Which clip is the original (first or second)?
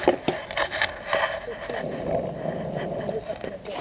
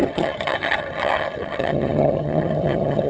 first